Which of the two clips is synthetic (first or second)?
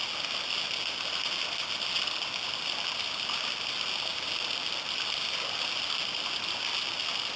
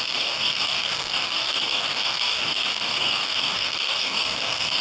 second